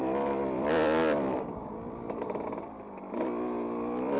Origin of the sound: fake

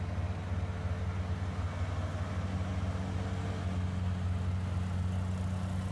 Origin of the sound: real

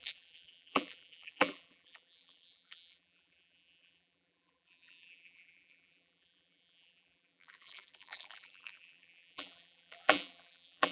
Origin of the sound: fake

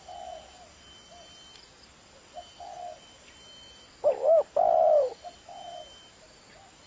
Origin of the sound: real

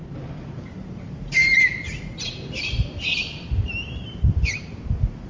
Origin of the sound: real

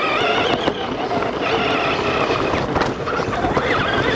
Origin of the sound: real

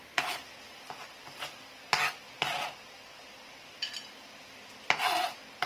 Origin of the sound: real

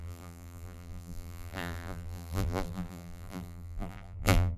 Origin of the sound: fake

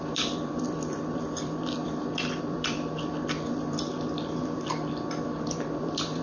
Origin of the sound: fake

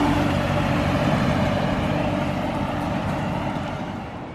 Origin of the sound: fake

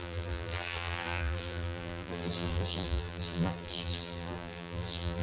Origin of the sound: fake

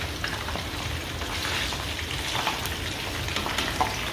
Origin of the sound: real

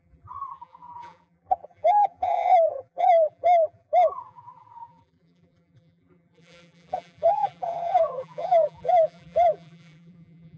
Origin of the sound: fake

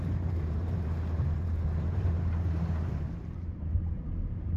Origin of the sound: fake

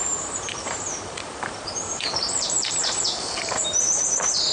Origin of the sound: fake